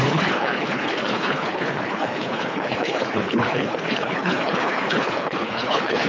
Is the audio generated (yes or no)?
yes